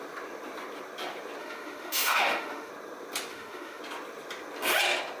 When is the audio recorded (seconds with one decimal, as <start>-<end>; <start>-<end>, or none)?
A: 0.0-1.4; 2.7-3.3; 3.8-5.2